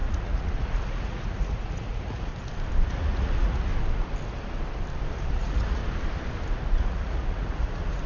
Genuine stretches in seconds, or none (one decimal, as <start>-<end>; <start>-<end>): 2.3-2.9; 3.7-5.3; 5.8-6.8